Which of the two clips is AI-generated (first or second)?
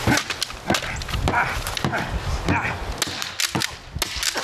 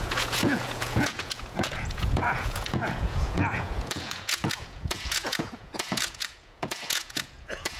second